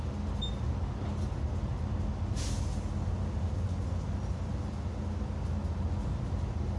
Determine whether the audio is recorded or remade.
recorded